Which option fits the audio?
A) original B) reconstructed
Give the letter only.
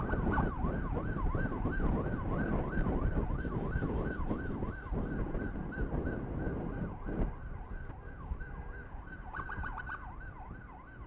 A